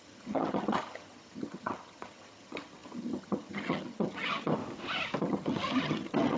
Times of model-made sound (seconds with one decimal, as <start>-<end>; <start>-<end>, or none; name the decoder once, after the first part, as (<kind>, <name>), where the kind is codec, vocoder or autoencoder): 0.0-4.6 (vocoder, HiFi-GAN); 5.2-6.4